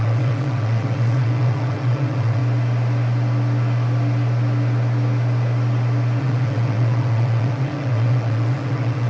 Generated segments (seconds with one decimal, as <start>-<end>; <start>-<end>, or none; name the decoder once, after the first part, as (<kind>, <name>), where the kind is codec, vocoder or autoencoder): 0.0-2.4 (vocoder, WaveNeXt); 6.2-9.1